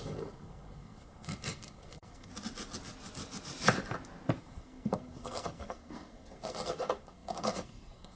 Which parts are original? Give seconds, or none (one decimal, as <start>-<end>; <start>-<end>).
2.3-4.4